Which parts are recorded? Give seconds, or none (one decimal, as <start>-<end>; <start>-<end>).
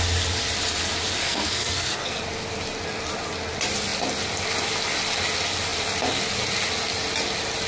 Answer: 0.0-1.2; 2.2-7.7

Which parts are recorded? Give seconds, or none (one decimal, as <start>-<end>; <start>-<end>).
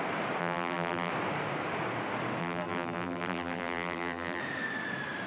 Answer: 0.0-0.4; 1.1-2.4; 4.4-5.3